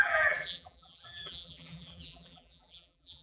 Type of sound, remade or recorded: remade